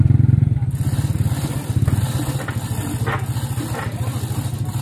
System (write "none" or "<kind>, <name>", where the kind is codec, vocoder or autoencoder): none